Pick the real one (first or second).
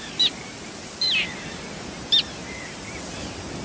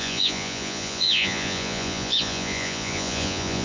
first